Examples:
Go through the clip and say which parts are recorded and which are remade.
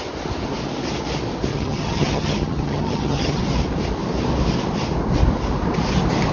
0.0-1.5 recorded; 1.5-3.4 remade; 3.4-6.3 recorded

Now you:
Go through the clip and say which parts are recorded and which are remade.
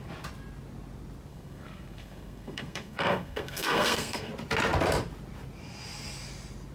0.0-1.3 recorded; 1.3-4.3 remade; 4.3-6.7 recorded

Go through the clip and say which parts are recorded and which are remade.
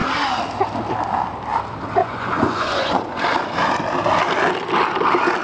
0.0-2.0 recorded; 2.0-3.2 remade; 3.2-5.4 recorded